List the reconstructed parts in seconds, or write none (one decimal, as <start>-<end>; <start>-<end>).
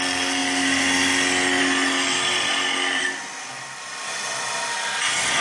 none